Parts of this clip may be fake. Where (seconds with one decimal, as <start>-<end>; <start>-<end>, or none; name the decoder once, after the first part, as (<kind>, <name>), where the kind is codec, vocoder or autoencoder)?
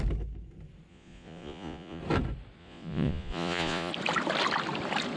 0.9-2.0 (vocoder, Vocos); 2.6-3.9